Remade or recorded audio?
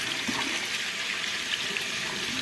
recorded